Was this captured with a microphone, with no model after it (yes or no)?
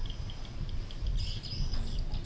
yes